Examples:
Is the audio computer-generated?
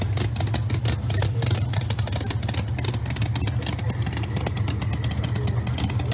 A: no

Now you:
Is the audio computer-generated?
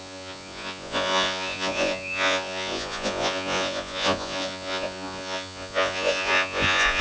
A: yes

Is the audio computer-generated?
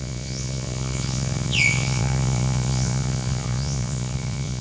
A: yes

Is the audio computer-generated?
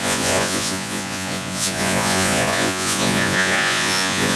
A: yes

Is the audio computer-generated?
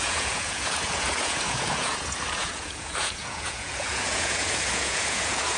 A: yes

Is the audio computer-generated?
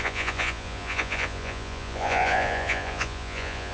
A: yes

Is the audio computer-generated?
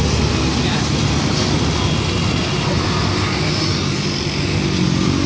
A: no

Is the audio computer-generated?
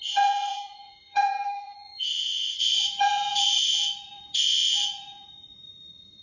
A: yes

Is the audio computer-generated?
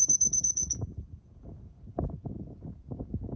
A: yes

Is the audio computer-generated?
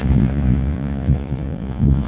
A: yes